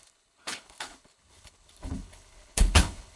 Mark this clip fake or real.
fake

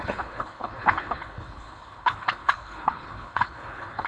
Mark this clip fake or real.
fake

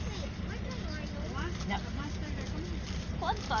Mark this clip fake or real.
real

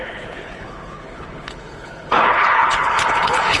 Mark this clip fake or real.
fake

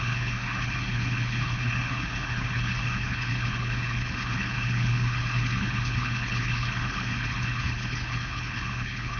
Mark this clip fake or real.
fake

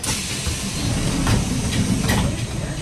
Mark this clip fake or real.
real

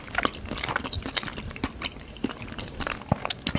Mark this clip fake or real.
real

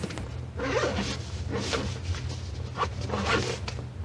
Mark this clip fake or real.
real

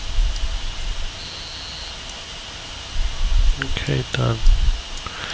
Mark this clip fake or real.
real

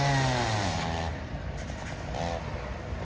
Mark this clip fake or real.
real